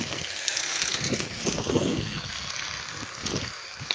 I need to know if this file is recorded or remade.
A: remade